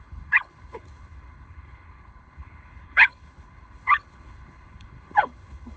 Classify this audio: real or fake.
fake